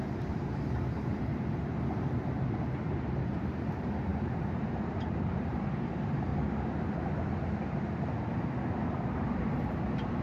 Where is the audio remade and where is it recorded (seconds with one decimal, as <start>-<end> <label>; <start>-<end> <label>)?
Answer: 0.0-1.3 remade; 1.3-3.2 recorded; 3.2-6.3 remade; 6.3-9.2 recorded; 9.2-10.2 remade